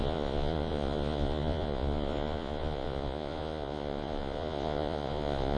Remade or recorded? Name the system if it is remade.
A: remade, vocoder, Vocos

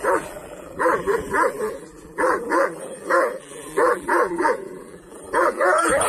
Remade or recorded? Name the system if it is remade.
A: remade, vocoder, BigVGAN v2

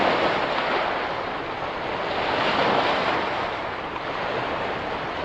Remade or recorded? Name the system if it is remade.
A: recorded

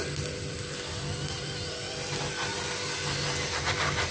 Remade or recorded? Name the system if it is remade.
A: recorded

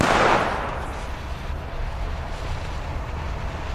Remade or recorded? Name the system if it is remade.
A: recorded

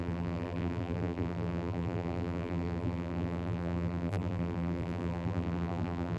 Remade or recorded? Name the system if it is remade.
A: remade, vocoder, BigVGAN v2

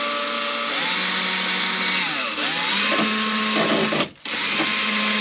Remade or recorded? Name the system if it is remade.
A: recorded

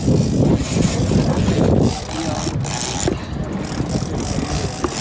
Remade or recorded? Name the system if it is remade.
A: recorded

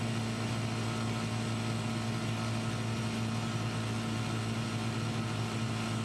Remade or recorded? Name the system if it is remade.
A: recorded